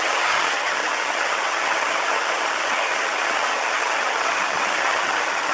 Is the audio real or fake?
fake